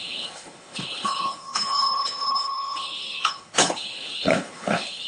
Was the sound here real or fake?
fake